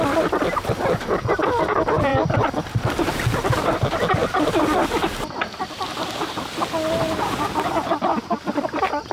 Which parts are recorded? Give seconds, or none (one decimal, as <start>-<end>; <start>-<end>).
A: 0.0-2.1; 2.9-9.1